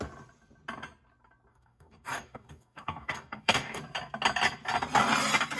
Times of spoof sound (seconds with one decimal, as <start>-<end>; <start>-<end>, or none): 1.5-3.8